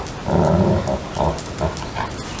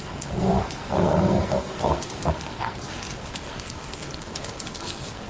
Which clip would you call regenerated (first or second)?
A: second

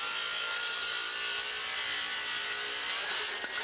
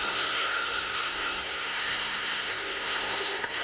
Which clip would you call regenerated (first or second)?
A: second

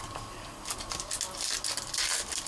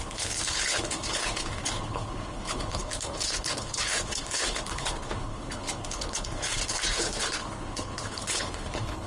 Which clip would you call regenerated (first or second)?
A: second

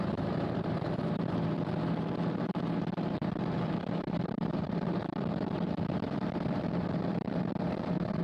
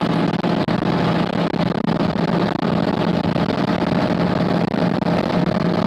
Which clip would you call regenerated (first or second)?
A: first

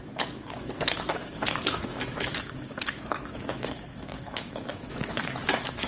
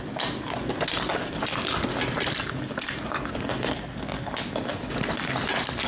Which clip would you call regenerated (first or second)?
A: first